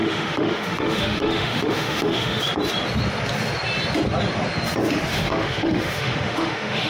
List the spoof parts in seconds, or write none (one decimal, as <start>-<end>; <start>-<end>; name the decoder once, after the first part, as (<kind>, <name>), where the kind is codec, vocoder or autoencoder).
0.0-2.4 (autoencoder, DAC-VAE); 5.1-6.9